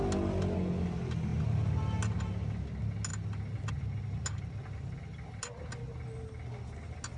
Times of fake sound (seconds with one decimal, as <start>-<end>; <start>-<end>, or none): none